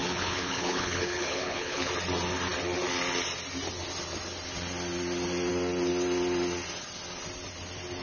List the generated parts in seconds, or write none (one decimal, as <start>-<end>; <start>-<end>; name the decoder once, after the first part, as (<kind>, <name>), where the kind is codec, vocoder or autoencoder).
0.0-1.9 (codec, HILCodec)